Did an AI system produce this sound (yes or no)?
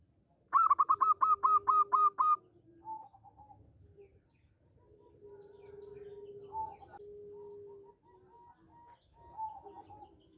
no